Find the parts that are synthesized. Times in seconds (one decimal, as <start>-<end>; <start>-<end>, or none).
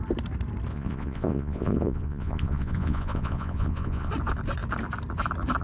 0.7-4.1